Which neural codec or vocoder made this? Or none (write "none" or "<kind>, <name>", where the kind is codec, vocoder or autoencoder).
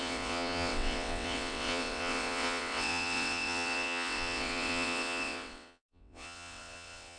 vocoder, WaveNeXt